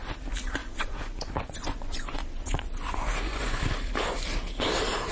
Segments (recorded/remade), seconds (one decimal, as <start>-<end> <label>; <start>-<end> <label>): 0.0-0.6 recorded; 0.6-3.7 remade; 3.7-5.1 recorded